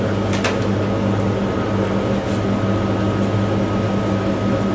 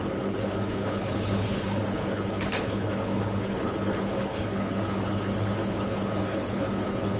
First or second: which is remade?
second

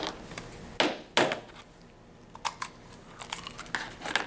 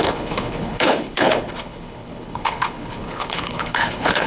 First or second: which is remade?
second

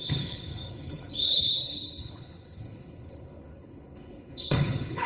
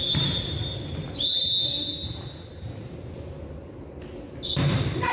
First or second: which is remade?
first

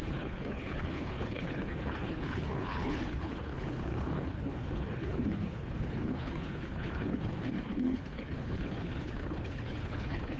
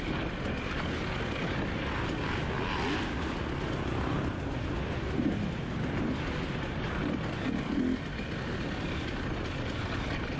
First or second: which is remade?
first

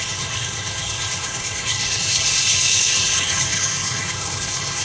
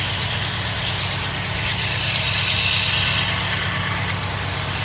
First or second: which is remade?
first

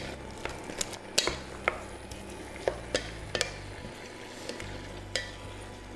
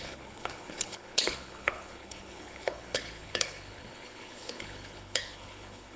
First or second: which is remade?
second